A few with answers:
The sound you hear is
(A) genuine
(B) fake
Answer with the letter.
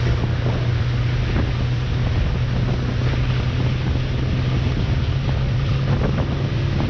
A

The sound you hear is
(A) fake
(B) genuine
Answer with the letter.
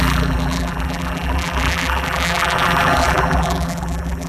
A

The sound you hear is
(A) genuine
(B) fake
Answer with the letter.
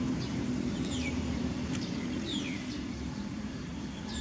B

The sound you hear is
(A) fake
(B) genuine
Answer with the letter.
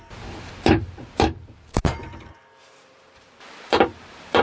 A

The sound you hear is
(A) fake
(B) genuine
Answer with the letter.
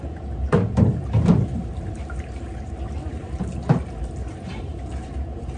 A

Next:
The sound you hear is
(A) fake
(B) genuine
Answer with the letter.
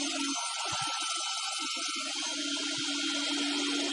B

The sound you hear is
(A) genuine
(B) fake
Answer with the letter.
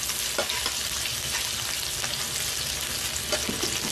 A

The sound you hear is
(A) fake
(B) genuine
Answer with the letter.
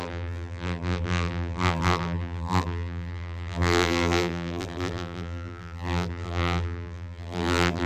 A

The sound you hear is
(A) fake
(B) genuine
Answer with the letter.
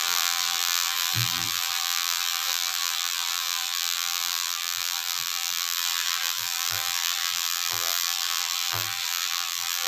A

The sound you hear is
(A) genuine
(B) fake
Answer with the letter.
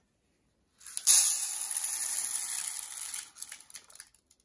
A